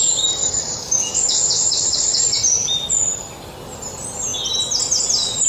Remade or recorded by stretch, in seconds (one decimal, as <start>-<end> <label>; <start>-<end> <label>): 0.0-0.4 recorded; 0.4-2.2 remade; 2.2-5.5 recorded